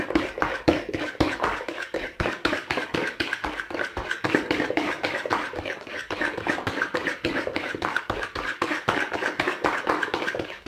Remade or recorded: remade